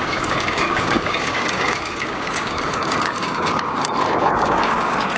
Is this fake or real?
fake